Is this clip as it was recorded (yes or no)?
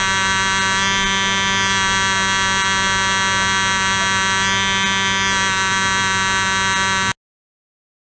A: yes